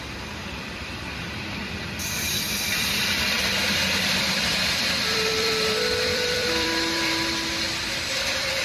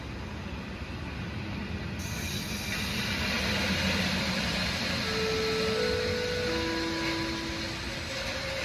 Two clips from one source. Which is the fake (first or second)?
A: first